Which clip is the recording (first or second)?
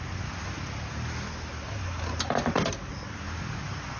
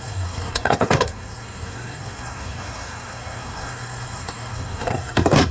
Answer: first